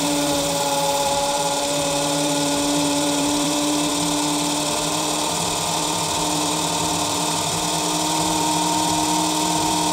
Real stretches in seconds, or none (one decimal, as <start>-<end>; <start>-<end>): none